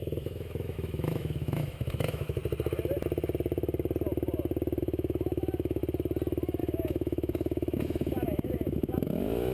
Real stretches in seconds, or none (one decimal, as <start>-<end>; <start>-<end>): 2.4-4.8; 5.8-6.6